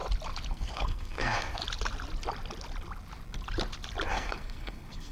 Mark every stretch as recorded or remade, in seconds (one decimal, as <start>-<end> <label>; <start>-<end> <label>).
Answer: 0.0-0.5 recorded; 0.5-1.6 remade; 1.6-4.1 recorded; 4.1-5.1 remade